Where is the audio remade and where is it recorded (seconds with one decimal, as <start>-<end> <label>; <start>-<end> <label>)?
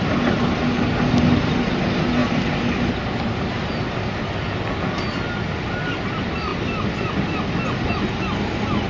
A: 0.0-8.9 recorded